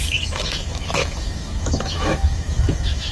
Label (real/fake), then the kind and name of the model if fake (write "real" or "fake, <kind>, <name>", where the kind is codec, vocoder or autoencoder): fake, autoencoder, DAC-VAE